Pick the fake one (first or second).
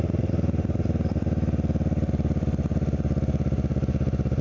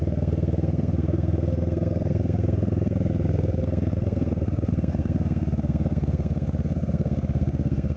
second